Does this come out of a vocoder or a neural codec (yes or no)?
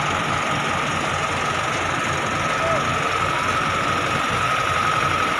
no